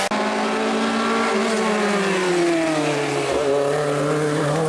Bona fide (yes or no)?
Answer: yes